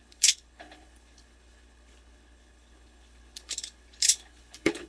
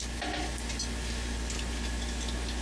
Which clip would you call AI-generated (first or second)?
first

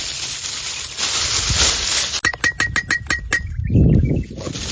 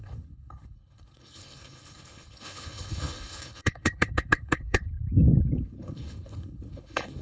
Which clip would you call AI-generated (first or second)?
second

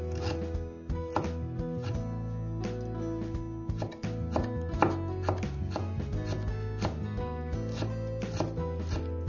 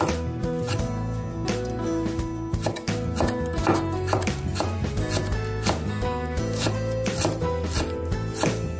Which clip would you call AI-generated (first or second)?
second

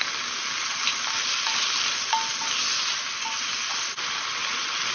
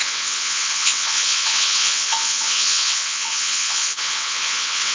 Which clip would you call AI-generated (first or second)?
second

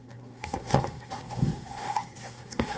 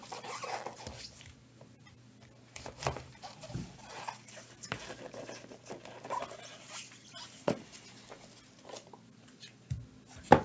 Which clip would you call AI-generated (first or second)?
first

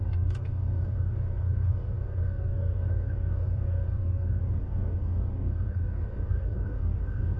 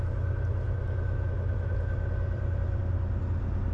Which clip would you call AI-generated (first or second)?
first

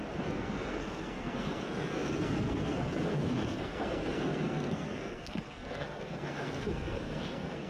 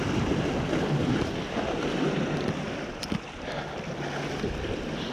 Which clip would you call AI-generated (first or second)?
first